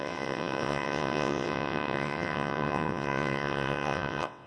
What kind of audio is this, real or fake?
fake